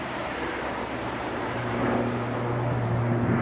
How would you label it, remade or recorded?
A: remade